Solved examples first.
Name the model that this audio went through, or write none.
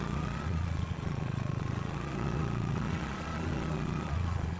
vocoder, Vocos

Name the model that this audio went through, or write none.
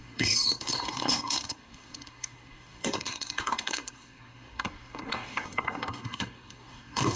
codec, SNAC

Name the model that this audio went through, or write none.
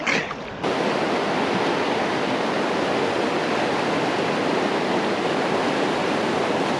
none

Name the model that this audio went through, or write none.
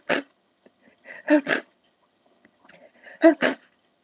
vocoder, HiFi-GAN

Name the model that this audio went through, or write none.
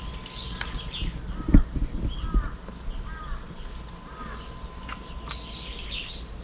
none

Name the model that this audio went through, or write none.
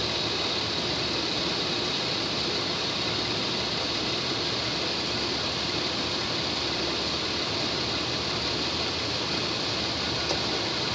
none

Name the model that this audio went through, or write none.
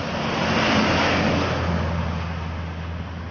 none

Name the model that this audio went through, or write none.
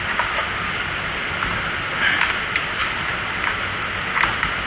none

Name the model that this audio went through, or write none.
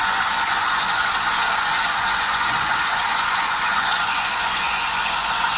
vocoder, Vocos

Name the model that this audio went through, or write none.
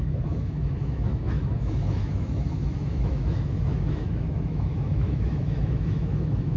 autoencoder, DAC-VAE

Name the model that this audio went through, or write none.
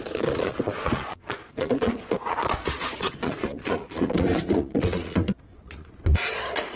vocoder, Vocos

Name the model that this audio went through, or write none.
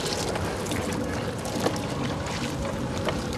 none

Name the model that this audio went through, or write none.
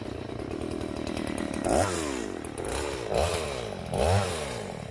none